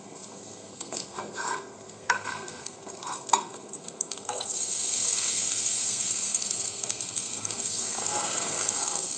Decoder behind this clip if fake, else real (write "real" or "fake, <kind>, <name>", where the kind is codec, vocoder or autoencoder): fake, codec, SNAC